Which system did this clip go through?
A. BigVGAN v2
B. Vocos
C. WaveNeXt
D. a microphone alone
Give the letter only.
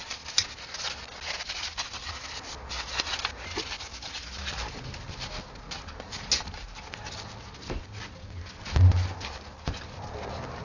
D